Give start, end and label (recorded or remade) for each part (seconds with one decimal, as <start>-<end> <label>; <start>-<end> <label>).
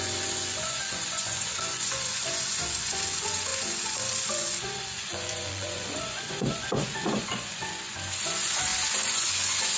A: 0.0-9.8 remade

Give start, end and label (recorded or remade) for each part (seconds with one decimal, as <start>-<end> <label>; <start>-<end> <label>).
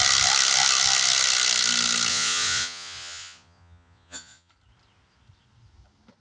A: 0.0-2.1 recorded; 2.1-4.5 remade; 4.5-6.2 recorded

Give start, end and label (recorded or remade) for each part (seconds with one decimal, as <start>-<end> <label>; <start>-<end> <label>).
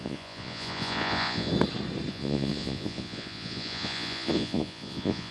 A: 0.0-1.5 remade; 1.5-2.1 recorded; 2.1-5.3 remade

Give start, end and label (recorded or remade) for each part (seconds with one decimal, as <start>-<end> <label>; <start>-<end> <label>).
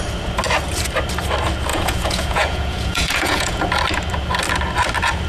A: 0.0-1.7 recorded; 1.7-3.6 remade; 3.6-5.3 recorded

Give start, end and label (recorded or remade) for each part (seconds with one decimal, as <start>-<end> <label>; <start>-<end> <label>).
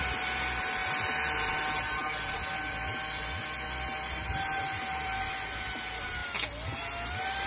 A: 0.0-7.5 recorded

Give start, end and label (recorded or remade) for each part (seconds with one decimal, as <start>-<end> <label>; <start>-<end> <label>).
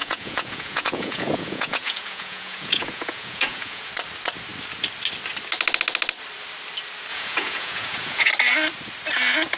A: 0.0-3.9 remade; 3.9-7.1 recorded; 7.1-8.3 remade; 8.3-9.6 recorded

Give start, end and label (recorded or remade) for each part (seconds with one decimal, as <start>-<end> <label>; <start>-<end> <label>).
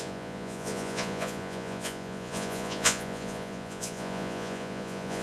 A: 0.0-5.2 remade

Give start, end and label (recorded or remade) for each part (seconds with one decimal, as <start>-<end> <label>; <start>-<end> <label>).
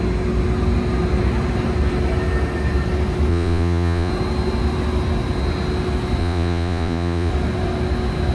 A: 0.0-3.3 recorded; 3.3-4.1 remade; 4.1-6.2 recorded; 6.2-7.3 remade; 7.3-8.3 recorded